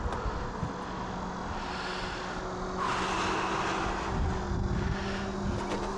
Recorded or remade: recorded